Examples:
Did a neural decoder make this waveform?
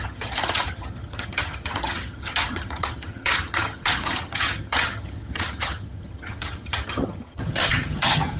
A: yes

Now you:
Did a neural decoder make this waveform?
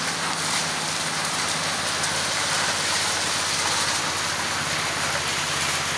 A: no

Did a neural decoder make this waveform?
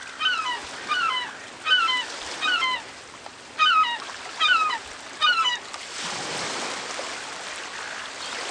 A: no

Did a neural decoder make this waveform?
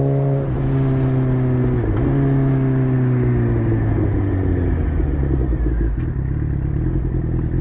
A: no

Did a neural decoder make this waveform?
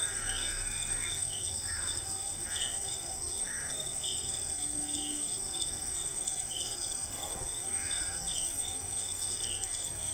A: yes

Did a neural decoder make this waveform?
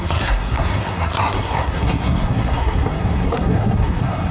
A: yes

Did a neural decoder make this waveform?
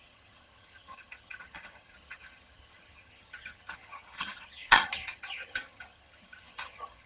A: yes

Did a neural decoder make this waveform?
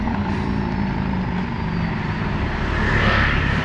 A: yes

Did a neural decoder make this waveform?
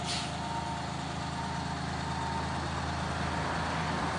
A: no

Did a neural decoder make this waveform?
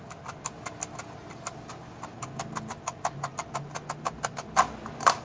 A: no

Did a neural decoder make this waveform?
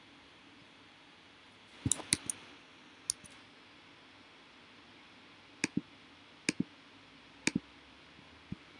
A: no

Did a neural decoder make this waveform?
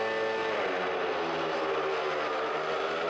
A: no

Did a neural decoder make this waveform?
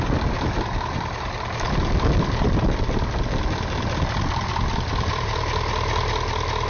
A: no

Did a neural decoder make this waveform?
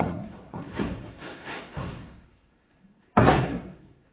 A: yes